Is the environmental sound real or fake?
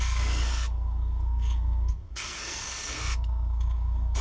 fake